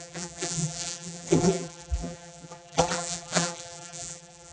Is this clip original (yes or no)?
no